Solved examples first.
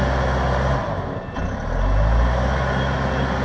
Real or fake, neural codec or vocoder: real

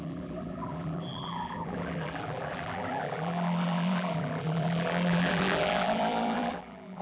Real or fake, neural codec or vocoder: fake, vocoder, BigVGAN v2